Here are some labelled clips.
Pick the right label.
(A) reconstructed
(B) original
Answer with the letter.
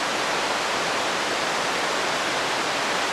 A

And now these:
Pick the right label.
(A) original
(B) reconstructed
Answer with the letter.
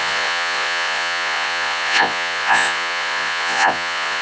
B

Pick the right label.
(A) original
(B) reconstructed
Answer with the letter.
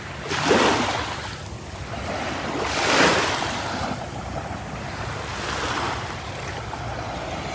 A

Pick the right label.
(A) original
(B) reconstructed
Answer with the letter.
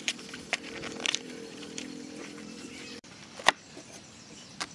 B